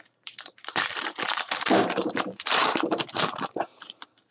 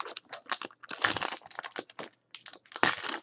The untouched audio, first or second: second